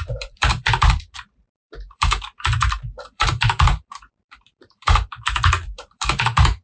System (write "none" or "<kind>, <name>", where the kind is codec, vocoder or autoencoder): vocoder, BigVGAN v2